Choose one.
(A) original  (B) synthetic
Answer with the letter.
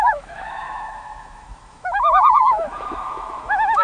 B